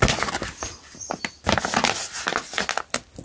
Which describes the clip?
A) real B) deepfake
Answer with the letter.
A